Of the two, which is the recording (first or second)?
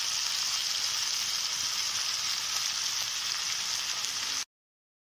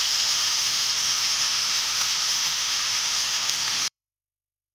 first